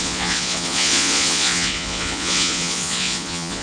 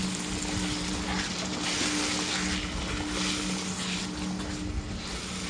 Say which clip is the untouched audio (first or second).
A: second